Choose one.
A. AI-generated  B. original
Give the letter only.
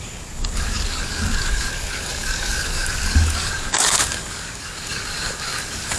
A